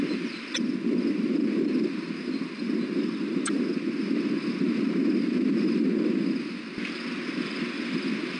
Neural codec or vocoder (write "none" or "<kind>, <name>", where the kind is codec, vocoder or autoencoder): none